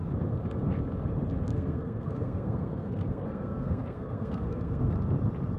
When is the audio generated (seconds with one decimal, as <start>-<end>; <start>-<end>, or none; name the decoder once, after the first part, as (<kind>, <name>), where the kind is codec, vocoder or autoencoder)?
1.5-4.9 (codec, SNAC)